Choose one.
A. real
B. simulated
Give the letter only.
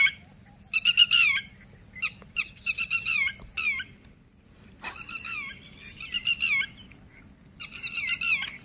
A